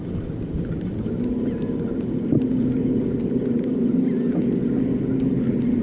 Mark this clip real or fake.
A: real